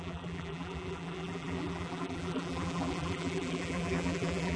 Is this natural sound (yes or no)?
no